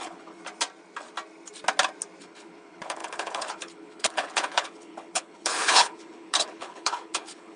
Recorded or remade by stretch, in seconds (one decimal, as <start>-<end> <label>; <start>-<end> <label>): 0.0-0.4 remade; 0.4-2.2 recorded; 2.2-7.6 remade